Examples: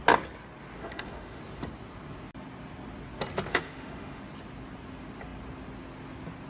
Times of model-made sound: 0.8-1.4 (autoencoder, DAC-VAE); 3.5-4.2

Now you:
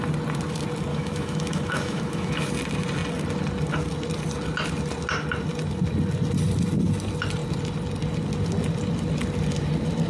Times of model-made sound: 0.9-2.5 (autoencoder, DAC-VAE)

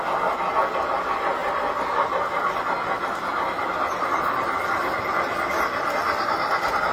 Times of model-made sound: none